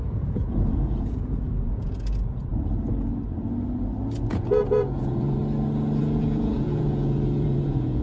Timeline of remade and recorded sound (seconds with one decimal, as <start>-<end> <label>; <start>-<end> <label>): 0.0-2.5 remade; 2.5-4.3 recorded; 4.3-5.4 remade; 5.4-6.0 recorded; 6.0-8.0 remade